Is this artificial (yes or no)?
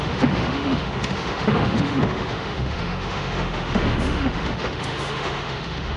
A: yes